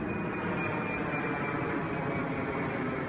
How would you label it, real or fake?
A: real